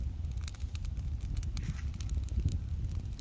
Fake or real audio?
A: real